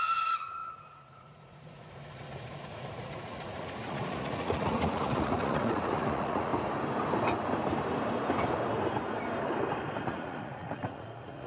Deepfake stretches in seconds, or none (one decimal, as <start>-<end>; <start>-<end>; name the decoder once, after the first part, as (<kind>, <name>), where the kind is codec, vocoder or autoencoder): 0.0-6.5 (vocoder, Vocos); 10.0-11.5